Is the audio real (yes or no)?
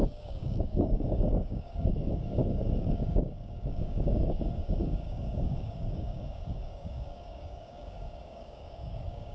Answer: no